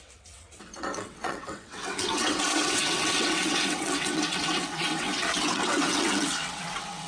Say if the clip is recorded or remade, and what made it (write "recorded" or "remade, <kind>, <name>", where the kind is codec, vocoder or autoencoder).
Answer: remade, vocoder, WaveNeXt